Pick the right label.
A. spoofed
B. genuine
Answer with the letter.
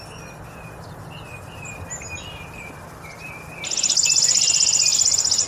B